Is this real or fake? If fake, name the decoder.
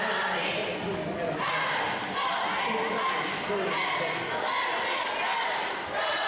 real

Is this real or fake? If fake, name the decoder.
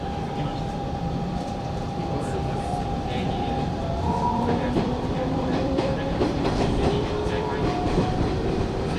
fake, vocoder, BigVGAN v2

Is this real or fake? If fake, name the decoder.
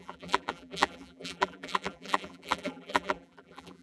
fake, vocoder, BigVGAN v2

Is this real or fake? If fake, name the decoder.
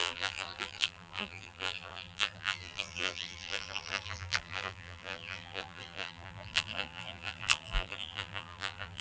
fake, vocoder, BigVGAN v2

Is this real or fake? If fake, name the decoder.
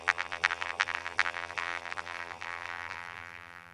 fake, vocoder, BigVGAN v2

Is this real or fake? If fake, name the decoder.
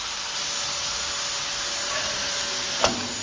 real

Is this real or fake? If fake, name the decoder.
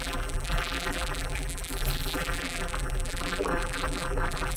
fake, vocoder, BigVGAN v2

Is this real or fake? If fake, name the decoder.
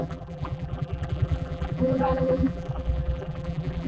fake, vocoder, BigVGAN v2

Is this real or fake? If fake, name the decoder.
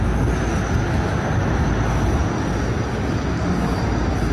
real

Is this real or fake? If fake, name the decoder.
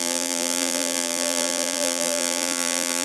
fake, vocoder, BigVGAN v2